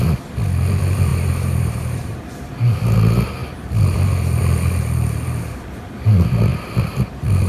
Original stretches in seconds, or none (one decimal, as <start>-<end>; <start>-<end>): 0.0-1.1; 2.2-7.5